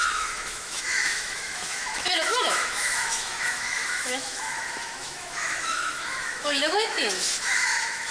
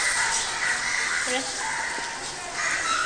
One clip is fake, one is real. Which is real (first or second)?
second